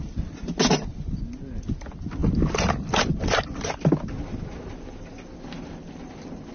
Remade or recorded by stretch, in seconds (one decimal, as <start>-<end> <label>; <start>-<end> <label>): 0.0-6.5 recorded

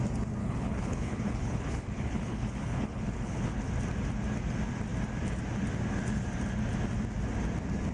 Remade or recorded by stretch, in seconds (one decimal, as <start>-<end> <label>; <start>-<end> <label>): 0.0-0.4 recorded; 0.4-3.7 remade; 3.7-7.9 recorded

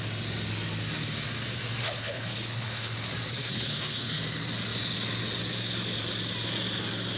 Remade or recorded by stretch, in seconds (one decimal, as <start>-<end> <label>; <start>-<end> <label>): 0.0-1.8 recorded; 1.8-2.9 remade; 2.9-3.4 recorded; 3.4-4.2 remade; 4.2-7.2 recorded